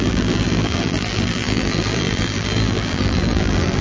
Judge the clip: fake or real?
fake